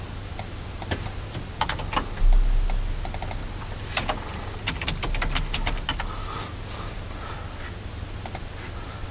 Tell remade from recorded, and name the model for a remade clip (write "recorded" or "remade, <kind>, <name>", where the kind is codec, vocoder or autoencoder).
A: recorded